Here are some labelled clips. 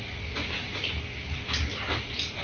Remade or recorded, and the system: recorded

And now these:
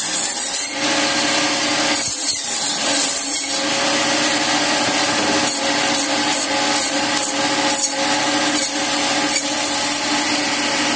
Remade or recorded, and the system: recorded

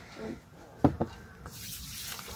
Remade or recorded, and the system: recorded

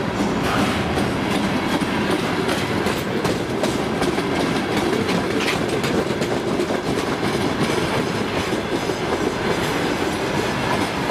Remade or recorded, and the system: recorded